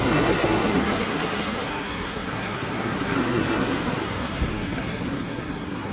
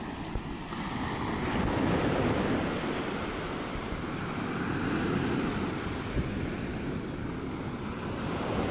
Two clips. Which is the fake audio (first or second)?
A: first